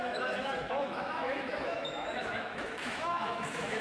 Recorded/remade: remade